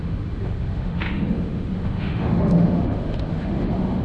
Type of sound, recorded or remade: remade